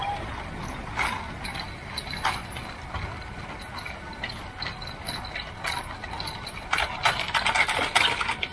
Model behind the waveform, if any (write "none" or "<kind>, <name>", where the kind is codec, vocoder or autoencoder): none